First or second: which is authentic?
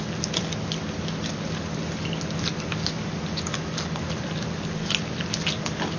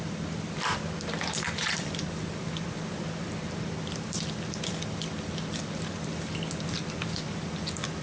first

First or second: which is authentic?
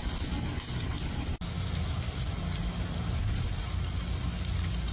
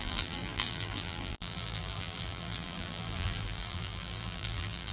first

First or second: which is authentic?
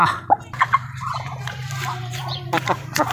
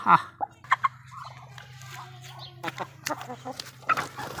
second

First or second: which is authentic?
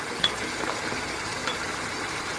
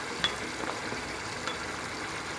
second